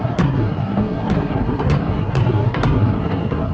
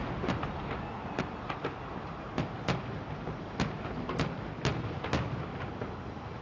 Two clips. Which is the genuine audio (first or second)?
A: second